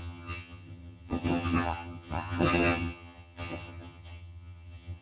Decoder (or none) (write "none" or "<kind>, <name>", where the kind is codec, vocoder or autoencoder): vocoder, HiFi-GAN